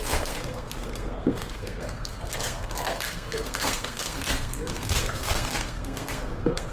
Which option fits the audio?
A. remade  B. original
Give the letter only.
A